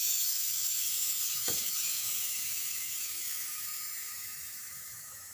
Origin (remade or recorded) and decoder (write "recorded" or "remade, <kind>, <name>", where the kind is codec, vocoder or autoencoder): remade, autoencoder, DAC-VAE